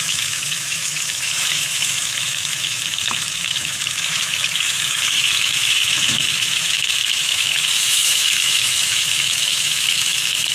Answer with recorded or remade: remade